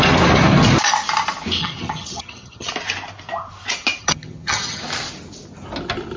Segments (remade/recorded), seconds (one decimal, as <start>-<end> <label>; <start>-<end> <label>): 0.0-1.6 recorded; 1.6-2.7 remade; 2.7-4.0 recorded; 4.0-4.8 remade; 4.8-6.2 recorded